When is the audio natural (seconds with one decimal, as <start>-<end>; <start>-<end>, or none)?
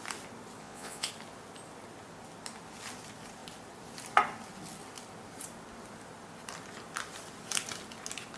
0.0-0.6; 1.1-8.4